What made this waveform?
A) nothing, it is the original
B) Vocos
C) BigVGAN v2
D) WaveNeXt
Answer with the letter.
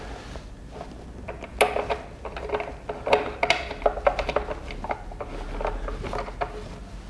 A